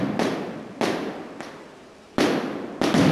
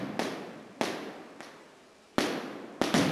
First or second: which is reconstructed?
first